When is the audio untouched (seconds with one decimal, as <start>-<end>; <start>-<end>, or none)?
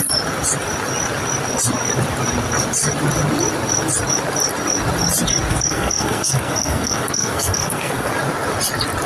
0.0-5.5; 8.1-9.1